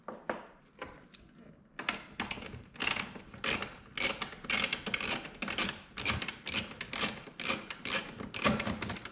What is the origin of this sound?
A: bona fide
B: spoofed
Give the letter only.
A